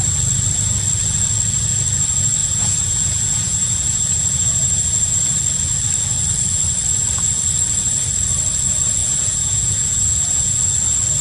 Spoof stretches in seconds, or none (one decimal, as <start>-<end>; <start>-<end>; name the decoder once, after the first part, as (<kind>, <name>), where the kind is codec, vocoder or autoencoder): 2.4-5.1 (vocoder, Vocos); 9.0-10.6